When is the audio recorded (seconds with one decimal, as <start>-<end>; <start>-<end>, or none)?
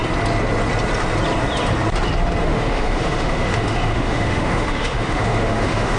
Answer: 0.0-2.4